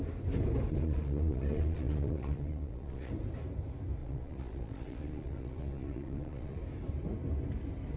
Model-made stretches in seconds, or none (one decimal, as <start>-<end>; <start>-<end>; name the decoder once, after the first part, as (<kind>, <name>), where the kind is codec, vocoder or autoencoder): 0.7-3.1 (vocoder, Vocos); 4.0-6.6